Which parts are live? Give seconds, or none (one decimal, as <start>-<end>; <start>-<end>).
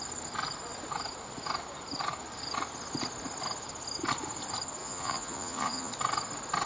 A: 0.0-4.8; 5.9-6.7